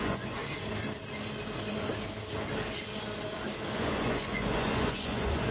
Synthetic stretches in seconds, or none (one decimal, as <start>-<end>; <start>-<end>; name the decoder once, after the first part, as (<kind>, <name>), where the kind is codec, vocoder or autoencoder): 0.0-0.4 (vocoder, Vocos); 3.7-5.5